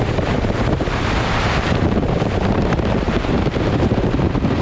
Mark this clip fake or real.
fake